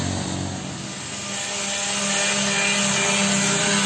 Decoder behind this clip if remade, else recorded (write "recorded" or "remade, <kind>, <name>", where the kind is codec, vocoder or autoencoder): recorded